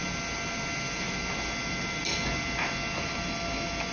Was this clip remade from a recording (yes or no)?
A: no